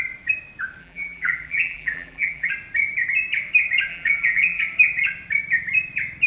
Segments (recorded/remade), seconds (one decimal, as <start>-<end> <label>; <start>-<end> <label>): 0.0-0.8 recorded; 0.8-2.5 remade; 2.5-3.9 recorded; 3.9-4.6 remade; 4.6-6.3 recorded

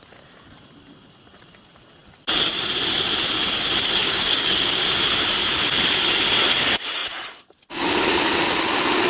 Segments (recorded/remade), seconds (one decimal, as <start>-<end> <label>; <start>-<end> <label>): 0.0-4.0 recorded; 4.0-4.8 remade; 4.8-9.1 recorded

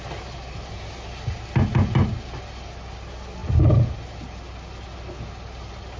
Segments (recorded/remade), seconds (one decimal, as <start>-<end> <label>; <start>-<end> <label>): 0.0-6.0 recorded

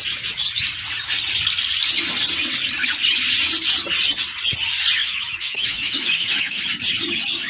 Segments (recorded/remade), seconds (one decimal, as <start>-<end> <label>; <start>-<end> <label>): 0.0-5.0 recorded; 5.0-6.6 remade; 6.6-7.5 recorded